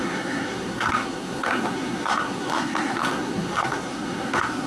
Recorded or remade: remade